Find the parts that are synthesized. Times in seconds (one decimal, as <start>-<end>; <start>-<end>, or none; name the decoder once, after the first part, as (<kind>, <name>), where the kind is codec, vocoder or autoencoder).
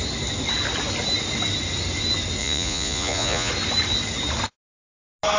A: 2.4-3.5 (vocoder, Vocos)